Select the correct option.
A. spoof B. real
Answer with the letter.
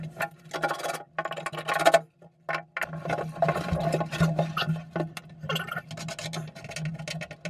B